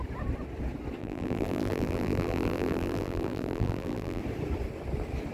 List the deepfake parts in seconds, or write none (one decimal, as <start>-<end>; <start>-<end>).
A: 1.0-4.2